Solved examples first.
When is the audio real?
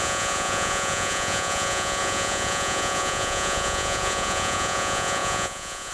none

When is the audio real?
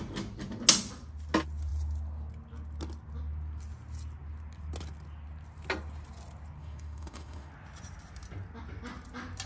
0.0-6.6; 7.5-9.5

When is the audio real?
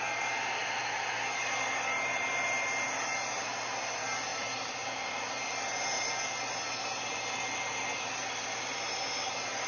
0.0-9.7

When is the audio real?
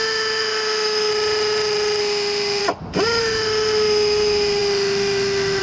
1.1-2.0; 2.6-3.2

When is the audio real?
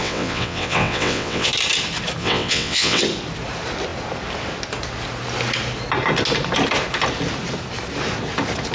1.5-2.2; 3.0-8.7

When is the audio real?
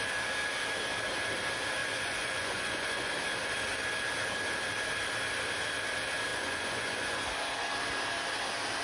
0.0-1.8; 3.1-6.3; 7.2-8.8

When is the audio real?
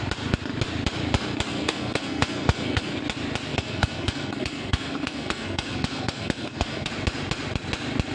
0.0-1.5; 3.0-3.5; 6.9-8.1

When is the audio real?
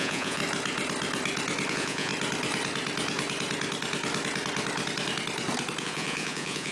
0.4-1.7; 2.1-5.8